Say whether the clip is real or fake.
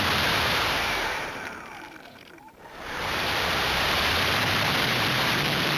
fake